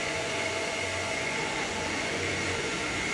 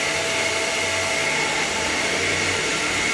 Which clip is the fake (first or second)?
first